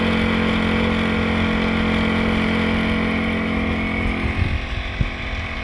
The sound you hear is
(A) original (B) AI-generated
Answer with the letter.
A